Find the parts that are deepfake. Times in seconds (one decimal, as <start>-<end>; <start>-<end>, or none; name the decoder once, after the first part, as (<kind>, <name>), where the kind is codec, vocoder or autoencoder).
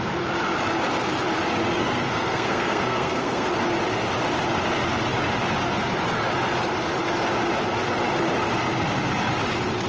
1.8-3.5 (codec, SNAC)